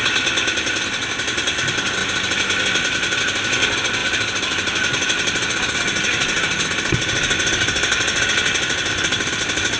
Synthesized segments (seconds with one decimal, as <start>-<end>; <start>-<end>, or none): none